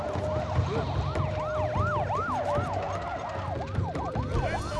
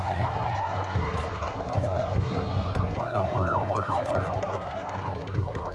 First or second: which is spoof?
second